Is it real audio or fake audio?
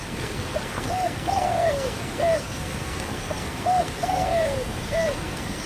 fake